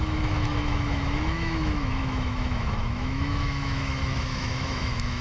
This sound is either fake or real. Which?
fake